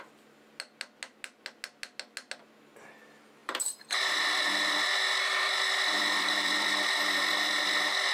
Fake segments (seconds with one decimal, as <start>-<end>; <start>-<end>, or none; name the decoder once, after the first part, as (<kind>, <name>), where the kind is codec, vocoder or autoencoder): 3.4-7.3 (vocoder, BigVGAN v2)